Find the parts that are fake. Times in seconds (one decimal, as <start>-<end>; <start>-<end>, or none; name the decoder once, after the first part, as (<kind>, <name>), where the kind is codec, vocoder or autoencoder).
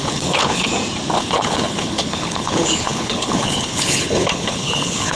0.0-0.7 (codec, HILCodec); 1.2-5.1